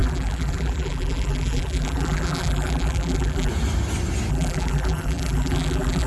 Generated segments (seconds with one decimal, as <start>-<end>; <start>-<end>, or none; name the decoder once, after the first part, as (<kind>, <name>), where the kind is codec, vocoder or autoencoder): 0.0-3.5 (vocoder, BigVGAN v2); 4.3-6.1